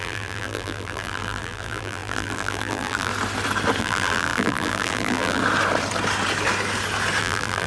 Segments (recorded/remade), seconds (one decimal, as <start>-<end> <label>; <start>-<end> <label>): 0.0-3.1 remade; 3.1-3.8 recorded; 3.8-5.4 remade; 5.4-7.2 recorded; 7.2-7.7 remade